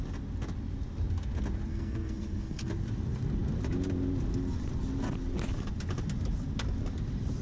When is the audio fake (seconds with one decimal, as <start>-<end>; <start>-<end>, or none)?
1.7-2.7